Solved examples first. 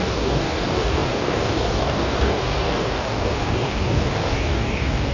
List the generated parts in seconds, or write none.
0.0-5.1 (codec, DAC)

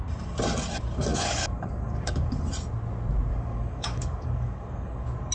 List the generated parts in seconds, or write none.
1.1-2.4 (codec, DAC); 3.3-5.3

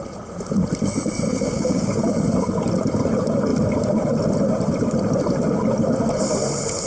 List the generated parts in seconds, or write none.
1.3-2.0 (codec, DAC)

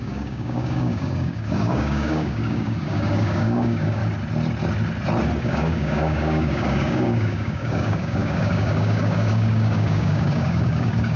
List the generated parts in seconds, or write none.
0.0-4.0 (codec, DAC); 5.4-11.2